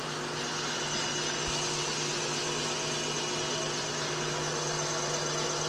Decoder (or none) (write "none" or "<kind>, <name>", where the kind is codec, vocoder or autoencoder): none